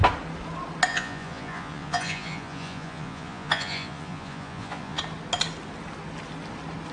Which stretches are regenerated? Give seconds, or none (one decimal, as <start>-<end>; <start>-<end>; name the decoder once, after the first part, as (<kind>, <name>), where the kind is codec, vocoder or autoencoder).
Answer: 0.9-5.0 (vocoder, Vocos)